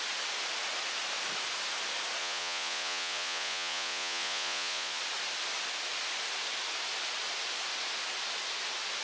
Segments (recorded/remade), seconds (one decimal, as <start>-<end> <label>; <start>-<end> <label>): 0.0-2.2 recorded; 2.2-5.0 remade; 5.0-9.0 recorded